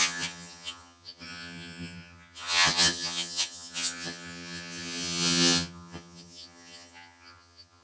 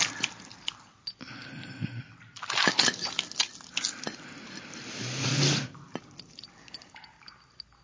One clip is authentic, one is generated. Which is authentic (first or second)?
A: second